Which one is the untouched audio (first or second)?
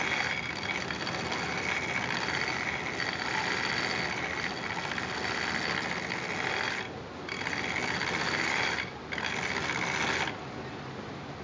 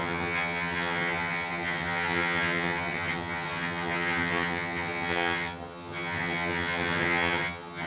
first